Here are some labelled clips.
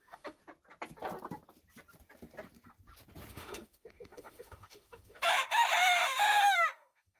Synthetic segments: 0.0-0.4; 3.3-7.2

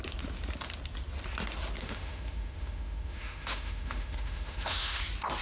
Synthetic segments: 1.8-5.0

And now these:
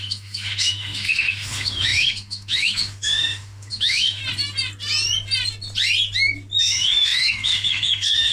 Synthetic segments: 0.0-4.2; 6.6-8.3

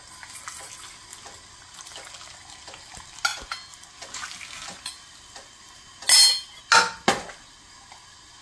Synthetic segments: none

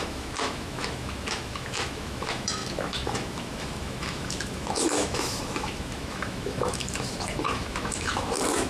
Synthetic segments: 0.0-8.7

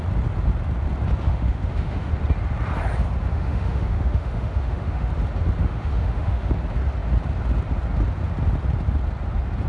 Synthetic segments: 1.3-2.1; 3.3-5.1; 5.6-6.5